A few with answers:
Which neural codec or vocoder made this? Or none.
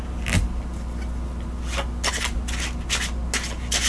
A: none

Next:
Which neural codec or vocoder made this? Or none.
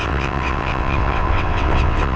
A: vocoder, WaveNeXt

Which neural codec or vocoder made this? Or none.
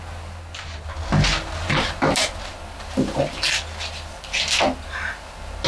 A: none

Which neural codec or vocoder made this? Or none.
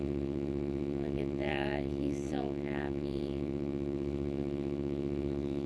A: vocoder, WaveNeXt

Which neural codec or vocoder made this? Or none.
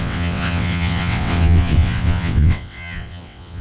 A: vocoder, WaveNeXt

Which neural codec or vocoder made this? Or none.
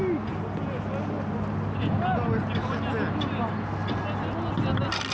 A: none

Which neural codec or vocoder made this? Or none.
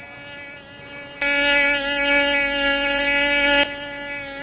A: none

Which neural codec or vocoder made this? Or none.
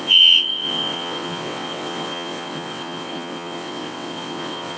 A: vocoder, WaveNeXt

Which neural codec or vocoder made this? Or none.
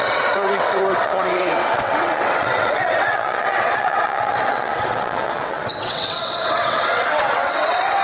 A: vocoder, WaveNeXt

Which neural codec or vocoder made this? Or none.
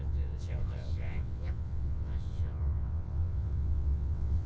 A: vocoder, WaveNeXt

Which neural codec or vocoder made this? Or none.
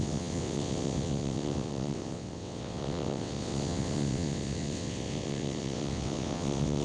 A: vocoder, WaveNeXt